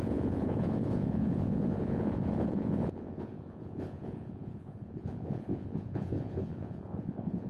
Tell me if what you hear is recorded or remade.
remade